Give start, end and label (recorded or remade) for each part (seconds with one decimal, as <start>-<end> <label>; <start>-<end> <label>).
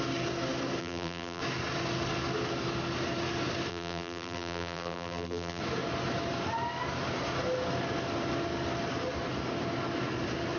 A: 0.0-0.8 recorded; 0.8-1.4 remade; 1.4-3.7 recorded; 3.7-5.6 remade; 5.6-10.6 recorded